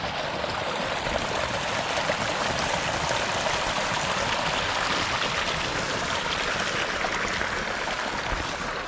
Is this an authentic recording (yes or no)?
yes